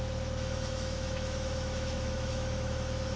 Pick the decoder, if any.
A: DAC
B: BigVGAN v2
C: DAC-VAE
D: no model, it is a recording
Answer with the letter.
C